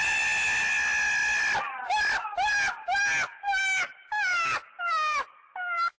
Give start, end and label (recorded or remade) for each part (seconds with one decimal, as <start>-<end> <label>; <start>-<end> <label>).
0.0-6.0 recorded